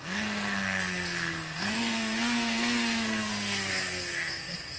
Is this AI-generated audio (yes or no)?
yes